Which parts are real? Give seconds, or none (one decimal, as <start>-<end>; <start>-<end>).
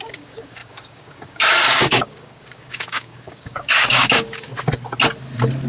4.5-5.7